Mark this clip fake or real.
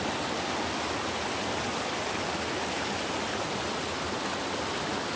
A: real